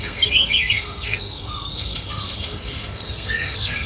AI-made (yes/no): yes